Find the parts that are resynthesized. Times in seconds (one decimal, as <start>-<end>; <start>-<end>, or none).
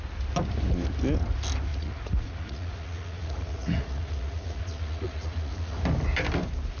1.7-5.8